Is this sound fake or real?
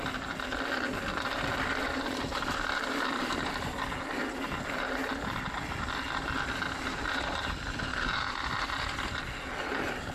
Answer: real